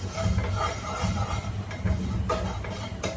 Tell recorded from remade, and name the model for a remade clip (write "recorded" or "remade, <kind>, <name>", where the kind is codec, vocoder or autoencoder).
remade, vocoder, BigVGAN v2